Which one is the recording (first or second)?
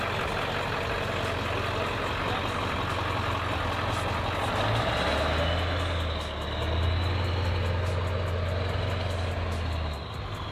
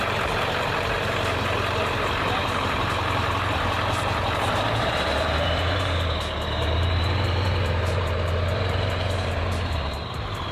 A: first